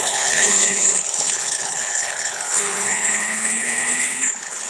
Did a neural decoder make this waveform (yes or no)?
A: yes